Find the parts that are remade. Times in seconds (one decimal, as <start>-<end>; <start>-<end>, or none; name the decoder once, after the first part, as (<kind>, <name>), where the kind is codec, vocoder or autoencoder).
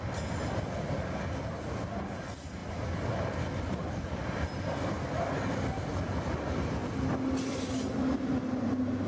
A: none